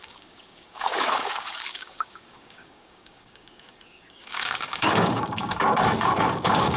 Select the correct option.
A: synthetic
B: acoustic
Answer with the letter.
A